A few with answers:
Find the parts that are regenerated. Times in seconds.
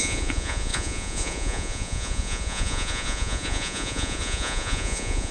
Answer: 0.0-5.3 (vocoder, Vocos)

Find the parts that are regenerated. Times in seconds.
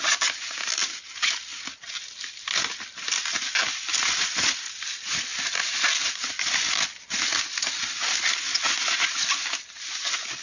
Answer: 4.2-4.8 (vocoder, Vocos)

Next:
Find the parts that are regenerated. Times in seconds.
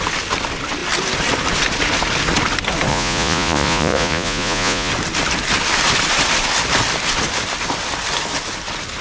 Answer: 2.9-4.9 (vocoder, Vocos)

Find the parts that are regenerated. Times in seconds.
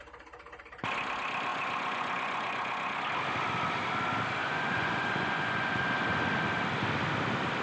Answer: 1.5-3.0 (vocoder, Vocos); 4.4-5.8